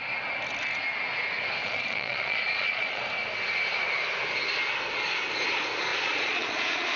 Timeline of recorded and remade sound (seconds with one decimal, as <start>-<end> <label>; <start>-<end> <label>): 0.0-1.6 recorded; 1.6-3.0 remade; 3.0-5.9 recorded; 5.9-7.0 remade